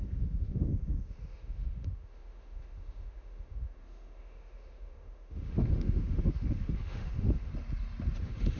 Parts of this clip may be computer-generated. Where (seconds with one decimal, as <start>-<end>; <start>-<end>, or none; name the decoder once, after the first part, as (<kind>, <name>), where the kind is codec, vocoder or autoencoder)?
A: 0.0-7.5 (autoencoder, DAC-VAE); 8.2-8.6